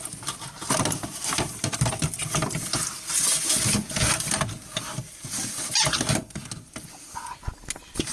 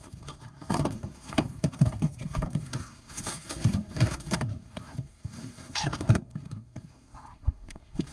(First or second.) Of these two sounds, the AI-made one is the second